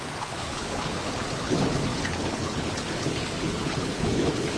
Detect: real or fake fake